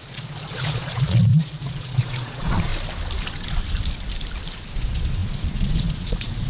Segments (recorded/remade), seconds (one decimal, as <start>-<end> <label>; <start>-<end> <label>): 0.0-2.7 remade; 2.7-4.8 recorded; 4.8-6.5 remade